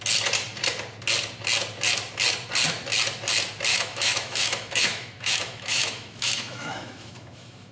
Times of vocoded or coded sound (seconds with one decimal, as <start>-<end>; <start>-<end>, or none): 3.7-7.7